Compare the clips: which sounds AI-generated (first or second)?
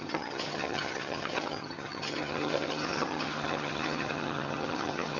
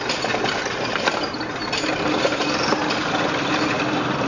first